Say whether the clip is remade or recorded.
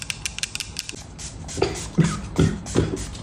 remade